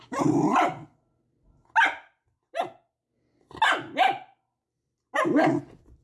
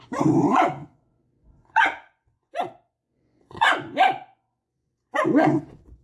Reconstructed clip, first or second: second